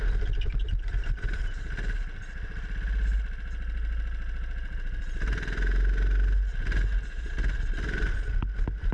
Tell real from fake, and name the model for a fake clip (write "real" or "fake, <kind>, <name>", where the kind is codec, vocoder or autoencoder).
real